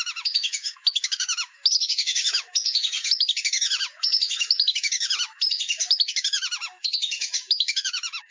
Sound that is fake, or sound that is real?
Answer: fake